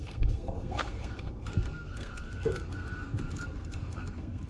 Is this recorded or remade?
remade